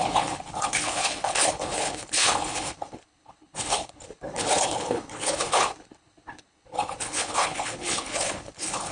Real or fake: fake